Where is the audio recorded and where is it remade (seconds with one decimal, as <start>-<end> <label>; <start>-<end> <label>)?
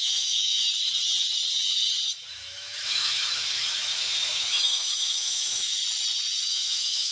0.0-0.6 remade; 0.6-2.3 recorded; 2.3-5.8 remade; 5.8-6.5 recorded; 6.5-7.1 remade